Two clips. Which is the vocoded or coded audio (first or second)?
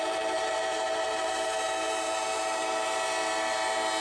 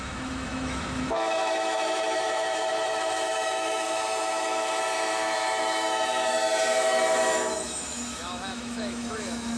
second